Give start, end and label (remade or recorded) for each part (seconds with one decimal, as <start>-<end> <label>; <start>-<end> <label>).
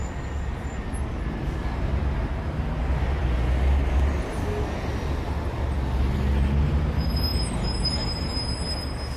0.0-9.2 recorded